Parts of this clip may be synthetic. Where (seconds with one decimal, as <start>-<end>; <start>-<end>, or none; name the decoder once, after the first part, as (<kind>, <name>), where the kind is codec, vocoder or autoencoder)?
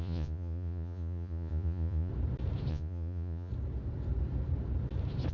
0.0-2.1 (vocoder, Vocos); 2.7-3.5